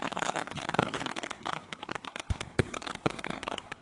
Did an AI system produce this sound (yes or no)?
yes